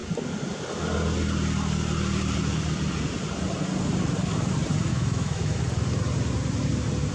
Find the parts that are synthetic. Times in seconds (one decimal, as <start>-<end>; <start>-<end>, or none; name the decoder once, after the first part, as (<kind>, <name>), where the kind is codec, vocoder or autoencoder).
4.9-5.6 (autoencoder, DAC-VAE)